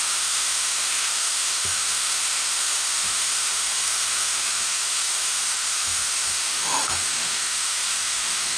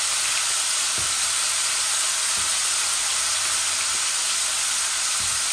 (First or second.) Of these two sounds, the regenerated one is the first